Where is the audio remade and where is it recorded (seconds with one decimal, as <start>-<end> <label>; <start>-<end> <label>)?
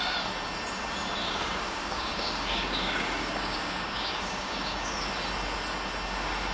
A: 0.0-1.2 recorded; 1.2-5.1 remade; 5.1-6.5 recorded